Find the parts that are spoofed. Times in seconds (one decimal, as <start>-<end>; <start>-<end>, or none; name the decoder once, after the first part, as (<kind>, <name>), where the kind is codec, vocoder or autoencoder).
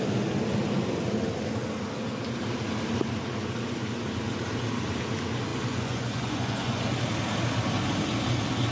5.5-6.8 (vocoder, Vocos)